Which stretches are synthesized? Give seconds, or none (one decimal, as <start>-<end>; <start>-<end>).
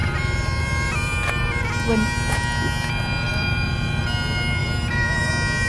0.0-1.5; 3.3-4.0; 4.6-5.3